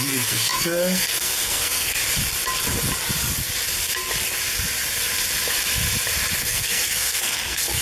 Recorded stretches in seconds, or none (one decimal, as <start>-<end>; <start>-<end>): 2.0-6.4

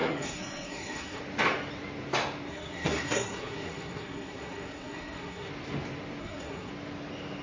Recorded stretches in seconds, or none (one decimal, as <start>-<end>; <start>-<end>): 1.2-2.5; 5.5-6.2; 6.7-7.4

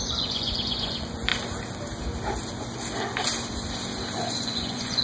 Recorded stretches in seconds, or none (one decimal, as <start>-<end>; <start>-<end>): 1.3-4.3